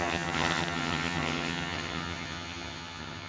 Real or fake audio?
fake